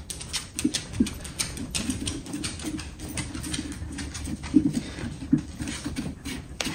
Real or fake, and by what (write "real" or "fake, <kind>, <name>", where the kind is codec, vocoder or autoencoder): real